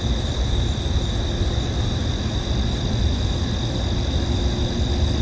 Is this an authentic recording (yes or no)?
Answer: yes